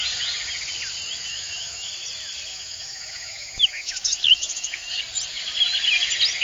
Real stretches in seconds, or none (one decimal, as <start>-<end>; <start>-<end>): 0.0-1.3; 1.9-2.5; 5.0-6.4